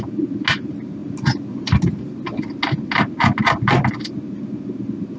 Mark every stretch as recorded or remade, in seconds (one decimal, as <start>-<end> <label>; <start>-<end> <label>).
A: 0.0-5.2 recorded